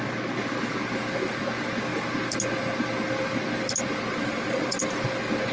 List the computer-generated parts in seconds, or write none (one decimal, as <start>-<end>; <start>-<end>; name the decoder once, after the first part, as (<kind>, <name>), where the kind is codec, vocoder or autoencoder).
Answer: 4.1-4.8 (vocoder, Vocos)

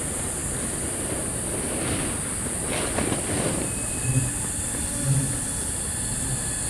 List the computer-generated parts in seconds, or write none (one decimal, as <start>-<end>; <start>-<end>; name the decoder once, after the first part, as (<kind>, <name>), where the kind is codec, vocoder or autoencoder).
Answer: none

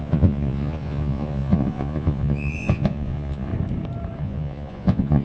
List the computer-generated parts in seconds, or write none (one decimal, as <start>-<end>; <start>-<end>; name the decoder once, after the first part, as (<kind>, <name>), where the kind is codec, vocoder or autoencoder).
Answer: 0.0-3.5 (vocoder, Vocos); 4.2-5.2

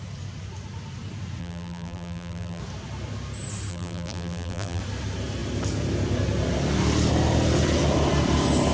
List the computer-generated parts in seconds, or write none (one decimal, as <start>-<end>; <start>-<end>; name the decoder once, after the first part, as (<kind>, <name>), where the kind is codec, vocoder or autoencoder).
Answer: 1.4-2.6 (vocoder, BigVGAN v2); 3.7-4.8

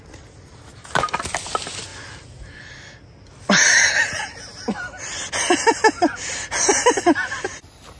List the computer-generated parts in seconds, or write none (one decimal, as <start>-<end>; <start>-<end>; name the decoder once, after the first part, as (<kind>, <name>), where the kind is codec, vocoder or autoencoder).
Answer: none

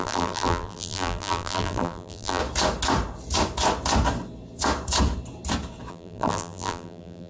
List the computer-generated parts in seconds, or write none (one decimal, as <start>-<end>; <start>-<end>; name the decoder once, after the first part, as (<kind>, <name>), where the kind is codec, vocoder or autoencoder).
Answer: 0.0-2.4 (vocoder, BigVGAN v2); 5.9-7.3